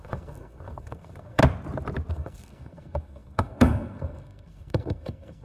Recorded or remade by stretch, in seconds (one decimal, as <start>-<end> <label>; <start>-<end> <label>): 0.0-1.4 remade; 1.4-2.1 recorded; 2.1-5.4 remade